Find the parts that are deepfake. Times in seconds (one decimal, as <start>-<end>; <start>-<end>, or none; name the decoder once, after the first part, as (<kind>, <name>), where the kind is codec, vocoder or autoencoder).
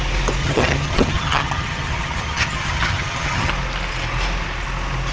0.4-3.5 (vocoder, HiFi-GAN)